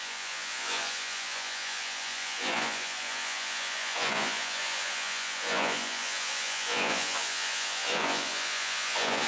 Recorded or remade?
remade